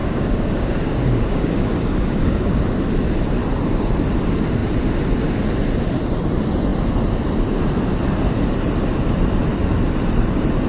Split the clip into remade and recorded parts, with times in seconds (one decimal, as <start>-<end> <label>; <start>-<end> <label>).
0.0-2.6 remade; 2.6-10.7 recorded